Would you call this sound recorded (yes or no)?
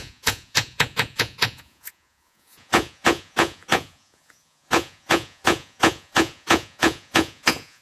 no